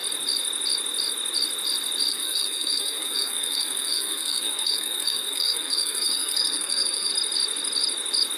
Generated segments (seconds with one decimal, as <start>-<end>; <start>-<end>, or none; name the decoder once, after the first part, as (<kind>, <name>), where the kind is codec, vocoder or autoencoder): 2.1-7.1 (codec, SNAC)